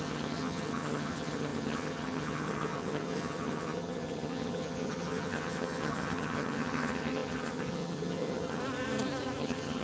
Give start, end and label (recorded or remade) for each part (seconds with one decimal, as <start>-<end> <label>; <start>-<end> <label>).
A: 0.0-8.6 remade; 8.6-9.4 recorded; 9.4-9.8 remade